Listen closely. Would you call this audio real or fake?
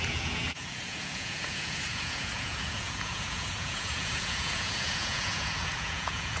fake